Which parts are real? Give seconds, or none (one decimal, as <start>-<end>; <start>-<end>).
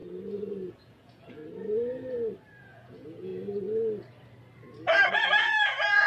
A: 0.0-0.7; 1.4-2.6; 3.3-5.1